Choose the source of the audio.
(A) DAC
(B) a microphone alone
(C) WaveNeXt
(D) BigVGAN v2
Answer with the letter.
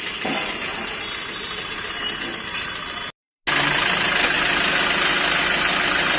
B